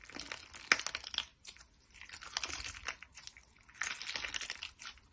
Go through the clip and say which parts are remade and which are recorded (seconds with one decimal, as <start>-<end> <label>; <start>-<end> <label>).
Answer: 0.0-5.1 recorded